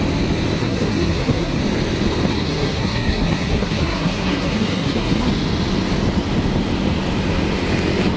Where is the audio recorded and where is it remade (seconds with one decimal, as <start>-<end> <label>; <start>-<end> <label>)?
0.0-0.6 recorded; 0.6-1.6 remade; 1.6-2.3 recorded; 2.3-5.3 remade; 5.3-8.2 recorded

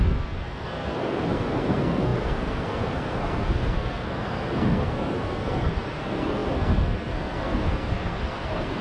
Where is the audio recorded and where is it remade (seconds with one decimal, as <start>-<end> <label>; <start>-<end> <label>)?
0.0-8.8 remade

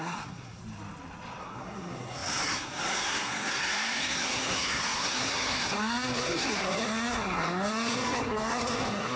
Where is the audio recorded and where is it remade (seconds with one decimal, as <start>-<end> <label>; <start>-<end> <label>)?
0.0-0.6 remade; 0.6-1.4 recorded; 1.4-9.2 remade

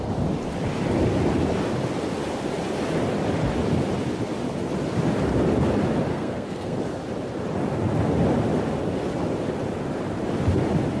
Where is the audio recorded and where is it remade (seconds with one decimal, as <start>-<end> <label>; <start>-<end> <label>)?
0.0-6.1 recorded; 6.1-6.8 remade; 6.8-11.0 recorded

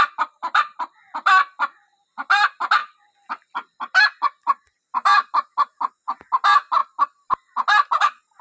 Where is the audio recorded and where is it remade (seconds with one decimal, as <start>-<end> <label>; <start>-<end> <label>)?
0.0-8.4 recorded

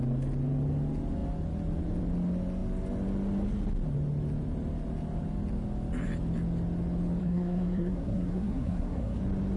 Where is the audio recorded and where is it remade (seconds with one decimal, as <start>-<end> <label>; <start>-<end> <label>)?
0.0-7.2 recorded; 7.2-9.2 remade; 9.2-9.6 recorded